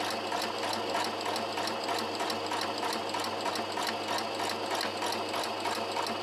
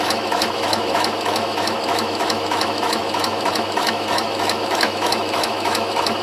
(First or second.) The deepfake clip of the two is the second